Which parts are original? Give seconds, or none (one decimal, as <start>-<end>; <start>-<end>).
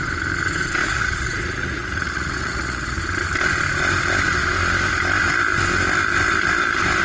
0.0-0.8; 3.0-7.0